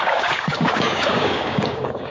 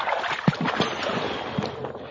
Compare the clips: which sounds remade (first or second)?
first